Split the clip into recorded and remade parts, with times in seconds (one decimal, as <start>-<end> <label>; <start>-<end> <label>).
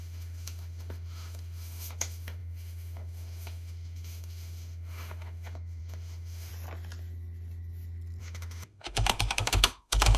0.0-6.5 remade; 6.5-8.2 recorded; 8.2-10.2 remade